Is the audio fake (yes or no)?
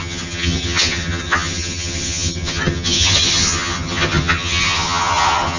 yes